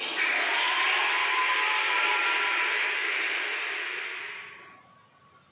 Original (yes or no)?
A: yes